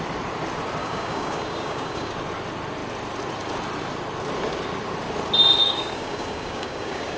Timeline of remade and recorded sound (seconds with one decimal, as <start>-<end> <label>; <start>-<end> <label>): 0.0-0.8 recorded; 0.8-2.1 remade; 2.1-5.6 recorded; 5.6-7.2 remade